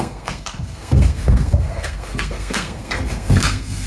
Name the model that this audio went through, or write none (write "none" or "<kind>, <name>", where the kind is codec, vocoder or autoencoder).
codec, SNAC